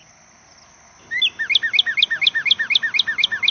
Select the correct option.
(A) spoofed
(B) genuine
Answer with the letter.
B